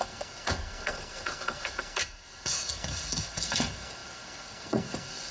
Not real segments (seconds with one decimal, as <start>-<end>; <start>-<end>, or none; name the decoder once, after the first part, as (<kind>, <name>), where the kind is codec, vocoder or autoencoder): 0.0-5.3 (codec, SNAC)